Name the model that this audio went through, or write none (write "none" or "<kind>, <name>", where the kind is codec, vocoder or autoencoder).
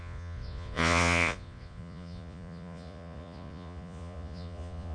vocoder, Vocos